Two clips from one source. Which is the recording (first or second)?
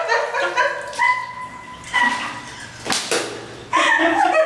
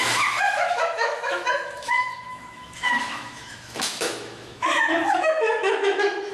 first